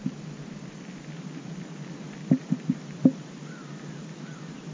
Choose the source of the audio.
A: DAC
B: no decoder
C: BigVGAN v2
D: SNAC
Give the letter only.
C